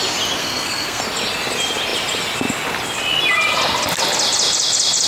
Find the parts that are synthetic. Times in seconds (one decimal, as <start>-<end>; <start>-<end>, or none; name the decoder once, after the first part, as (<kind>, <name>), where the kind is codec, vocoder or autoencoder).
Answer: 0.4-1.0 (codec, SNAC)